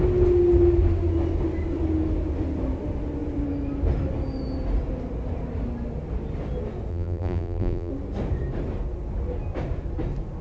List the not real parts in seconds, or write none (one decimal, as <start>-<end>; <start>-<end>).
6.9-7.9